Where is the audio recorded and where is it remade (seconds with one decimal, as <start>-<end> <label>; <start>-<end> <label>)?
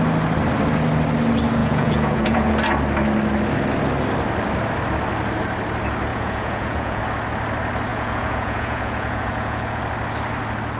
0.0-1.6 recorded; 1.6-2.5 remade; 2.5-6.1 recorded; 6.1-7.0 remade; 7.0-7.9 recorded; 7.9-9.8 remade; 9.8-10.8 recorded